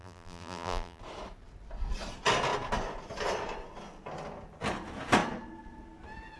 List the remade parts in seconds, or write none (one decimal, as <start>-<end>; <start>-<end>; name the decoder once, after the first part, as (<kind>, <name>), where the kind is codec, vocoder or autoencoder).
0.0-1.0 (vocoder, BigVGAN v2)